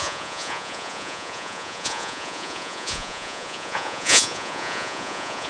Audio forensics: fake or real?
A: fake